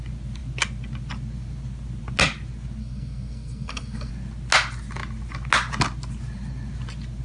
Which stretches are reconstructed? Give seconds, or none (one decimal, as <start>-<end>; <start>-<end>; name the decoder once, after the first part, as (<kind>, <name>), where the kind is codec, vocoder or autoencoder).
2.8-4.1 (codec, SNAC)